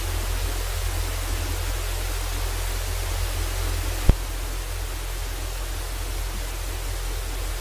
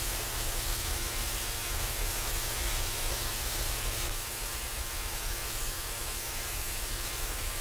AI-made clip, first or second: second